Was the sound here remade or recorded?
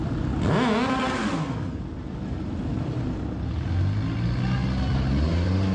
recorded